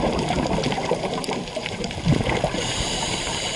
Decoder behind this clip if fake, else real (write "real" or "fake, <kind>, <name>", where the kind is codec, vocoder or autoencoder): fake, vocoder, BigVGAN v2